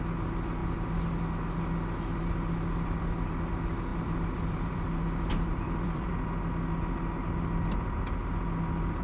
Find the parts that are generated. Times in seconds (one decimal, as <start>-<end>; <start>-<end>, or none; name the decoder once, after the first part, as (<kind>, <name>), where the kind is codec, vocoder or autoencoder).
3.9-6.1 (vocoder, BigVGAN v2)